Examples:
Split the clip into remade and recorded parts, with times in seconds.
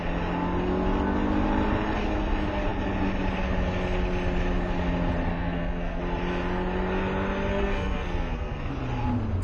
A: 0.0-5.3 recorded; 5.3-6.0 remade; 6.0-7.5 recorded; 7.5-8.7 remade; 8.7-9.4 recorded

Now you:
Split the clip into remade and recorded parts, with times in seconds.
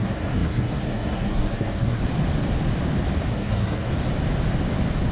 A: 0.0-2.0 remade; 2.0-3.3 recorded; 3.3-3.9 remade; 3.9-5.1 recorded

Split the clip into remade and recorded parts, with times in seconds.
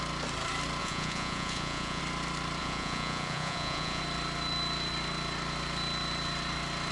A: 0.0-0.8 recorded; 0.8-2.0 remade; 2.0-2.6 recorded; 2.6-4.0 remade; 4.0-6.9 recorded